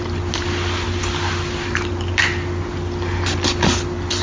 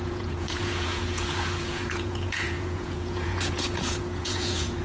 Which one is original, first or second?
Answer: first